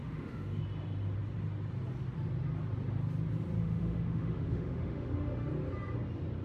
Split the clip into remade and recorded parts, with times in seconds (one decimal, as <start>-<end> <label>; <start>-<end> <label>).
0.0-0.6 remade; 0.6-3.6 recorded; 3.6-5.5 remade; 5.5-6.4 recorded